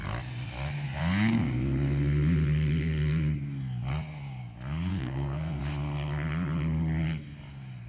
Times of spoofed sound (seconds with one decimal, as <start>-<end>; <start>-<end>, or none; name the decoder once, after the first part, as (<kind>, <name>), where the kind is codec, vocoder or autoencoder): 4.9-5.6 (codec, SNAC)